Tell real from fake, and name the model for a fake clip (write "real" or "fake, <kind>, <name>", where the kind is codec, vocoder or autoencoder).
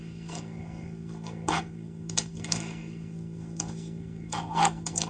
fake, codec, SNAC